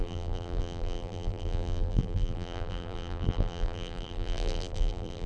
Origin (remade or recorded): remade